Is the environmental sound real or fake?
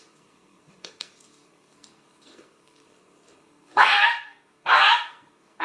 fake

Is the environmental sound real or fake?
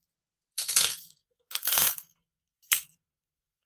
fake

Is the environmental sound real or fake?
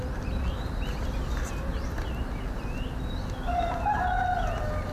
real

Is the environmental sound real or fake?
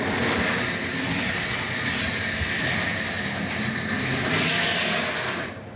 real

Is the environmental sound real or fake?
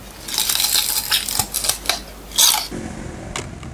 real